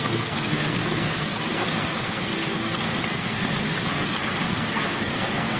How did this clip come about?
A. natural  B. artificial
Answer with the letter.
B